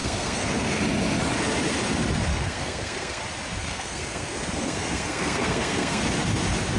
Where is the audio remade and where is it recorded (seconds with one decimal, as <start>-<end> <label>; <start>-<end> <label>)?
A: 0.0-0.8 remade; 0.8-2.3 recorded; 2.3-3.2 remade; 3.2-3.6 recorded; 3.6-6.0 remade; 6.0-6.8 recorded